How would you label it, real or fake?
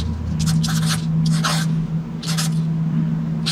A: real